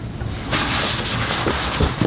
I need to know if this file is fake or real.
real